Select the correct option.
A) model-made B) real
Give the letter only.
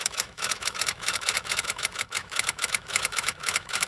A